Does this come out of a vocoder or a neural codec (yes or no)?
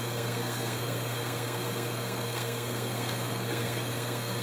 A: yes